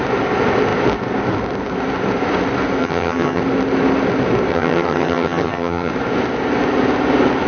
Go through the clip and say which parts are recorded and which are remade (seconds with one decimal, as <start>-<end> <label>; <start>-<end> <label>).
0.0-2.8 recorded; 2.8-3.4 remade; 3.4-4.5 recorded; 4.5-5.9 remade; 5.9-7.5 recorded